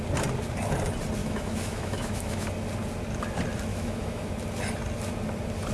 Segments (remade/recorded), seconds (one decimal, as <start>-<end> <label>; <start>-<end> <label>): 0.0-1.2 recorded; 1.2-2.5 remade; 2.5-3.7 recorded; 3.7-4.3 remade; 4.3-5.7 recorded